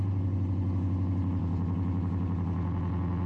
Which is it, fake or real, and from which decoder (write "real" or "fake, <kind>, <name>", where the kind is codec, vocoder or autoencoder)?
real